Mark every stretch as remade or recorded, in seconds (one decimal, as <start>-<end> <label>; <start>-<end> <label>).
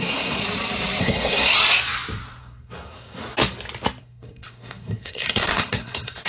0.0-0.4 remade; 0.4-1.0 recorded; 1.0-1.5 remade; 1.5-2.4 recorded; 2.4-3.2 remade; 3.2-4.0 recorded; 4.0-6.3 remade